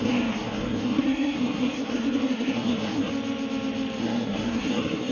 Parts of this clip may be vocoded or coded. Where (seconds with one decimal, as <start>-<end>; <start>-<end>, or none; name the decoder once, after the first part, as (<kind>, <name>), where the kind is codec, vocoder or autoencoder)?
0.0-3.1 (codec, SNAC); 4.0-5.1